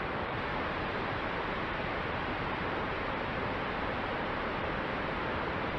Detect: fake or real fake